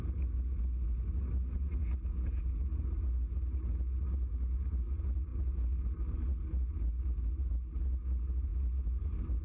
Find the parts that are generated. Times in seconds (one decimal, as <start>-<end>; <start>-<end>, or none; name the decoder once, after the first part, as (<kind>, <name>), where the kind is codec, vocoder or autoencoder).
none